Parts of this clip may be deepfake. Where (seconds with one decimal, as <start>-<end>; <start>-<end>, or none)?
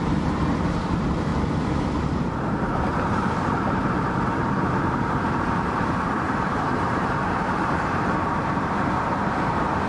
0.0-1.3; 2.0-9.9